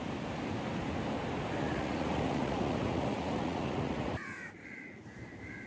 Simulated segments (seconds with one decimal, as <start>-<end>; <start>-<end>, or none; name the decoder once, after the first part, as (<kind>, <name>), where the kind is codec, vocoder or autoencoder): 1.6-5.0 (vocoder, Vocos)